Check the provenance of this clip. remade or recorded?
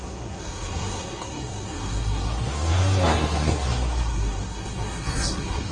remade